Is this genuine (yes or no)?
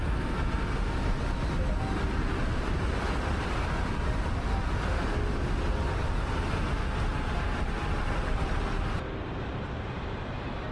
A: yes